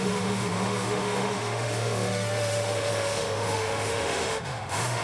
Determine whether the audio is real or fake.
fake